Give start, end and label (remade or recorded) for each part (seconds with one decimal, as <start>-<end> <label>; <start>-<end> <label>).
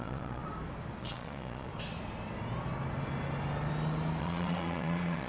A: 0.0-0.4 remade; 0.4-1.0 recorded; 1.0-1.7 remade; 1.7-4.2 recorded; 4.2-5.3 remade